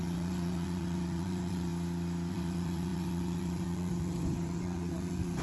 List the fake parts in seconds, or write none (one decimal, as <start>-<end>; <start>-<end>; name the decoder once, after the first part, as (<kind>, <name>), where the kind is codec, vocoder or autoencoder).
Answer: 0.0-1.7 (vocoder, Vocos); 2.3-5.4